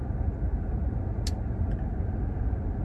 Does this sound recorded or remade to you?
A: recorded